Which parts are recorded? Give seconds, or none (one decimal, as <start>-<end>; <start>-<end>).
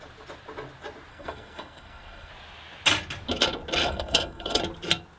0.0-1.1; 2.3-3.8; 4.6-5.2